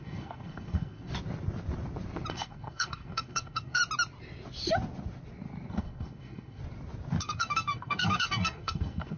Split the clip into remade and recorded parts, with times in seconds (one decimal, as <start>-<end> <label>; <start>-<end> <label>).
0.0-1.1 remade; 1.1-2.3 recorded; 2.3-3.8 remade; 3.8-5.7 recorded; 5.7-6.6 remade; 6.6-7.2 recorded; 7.2-9.2 remade